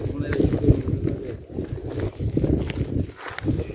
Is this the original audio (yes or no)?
yes